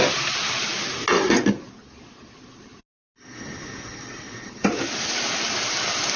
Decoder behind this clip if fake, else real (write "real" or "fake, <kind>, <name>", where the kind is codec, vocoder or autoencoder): real